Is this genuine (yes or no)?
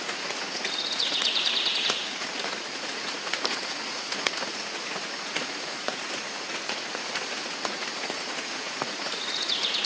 no